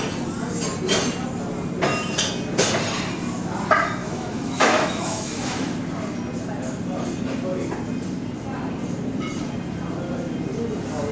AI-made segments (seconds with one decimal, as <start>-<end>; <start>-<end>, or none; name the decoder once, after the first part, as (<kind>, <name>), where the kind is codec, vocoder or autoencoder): 4.0-5.7 (autoencoder, DAC-VAE)